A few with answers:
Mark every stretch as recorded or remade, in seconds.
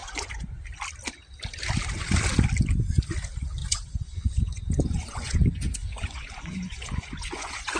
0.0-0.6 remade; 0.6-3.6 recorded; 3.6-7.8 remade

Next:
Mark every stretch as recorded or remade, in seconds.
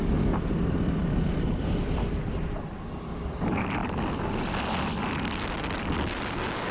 0.0-6.7 recorded